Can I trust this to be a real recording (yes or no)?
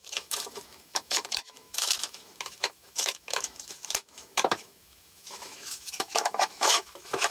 no